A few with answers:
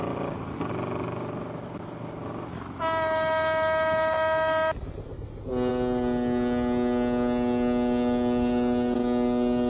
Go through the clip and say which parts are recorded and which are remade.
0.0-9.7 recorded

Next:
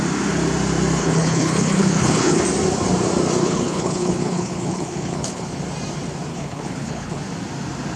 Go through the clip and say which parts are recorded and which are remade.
0.0-1.0 recorded; 1.0-2.4 remade; 2.4-3.4 recorded; 3.4-5.6 remade; 5.6-6.3 recorded; 6.3-7.2 remade; 7.2-8.0 recorded

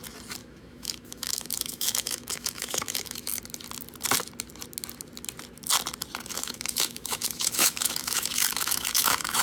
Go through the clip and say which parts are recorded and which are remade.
0.0-0.4 recorded; 0.4-3.4 remade; 3.4-6.3 recorded; 6.3-9.4 remade